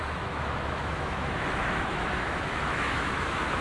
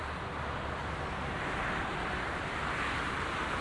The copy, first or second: first